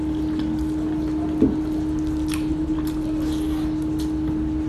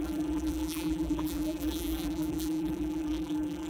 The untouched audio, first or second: first